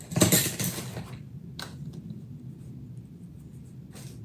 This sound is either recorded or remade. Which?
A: recorded